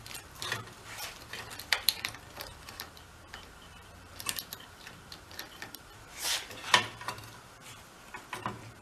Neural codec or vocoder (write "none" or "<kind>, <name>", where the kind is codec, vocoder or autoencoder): vocoder, BigVGAN v2